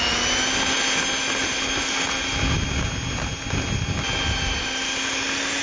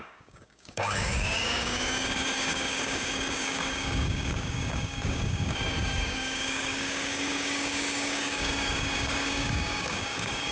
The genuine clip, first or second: first